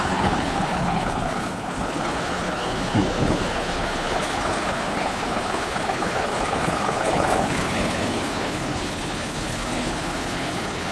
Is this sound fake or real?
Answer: fake